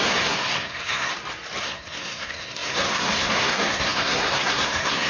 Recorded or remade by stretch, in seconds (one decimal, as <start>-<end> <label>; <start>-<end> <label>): 0.0-1.1 remade; 1.1-1.6 recorded; 1.6-5.1 remade